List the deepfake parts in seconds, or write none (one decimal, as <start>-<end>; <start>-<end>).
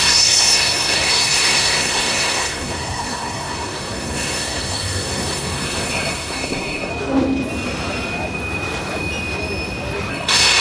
0.0-6.9; 10.1-10.6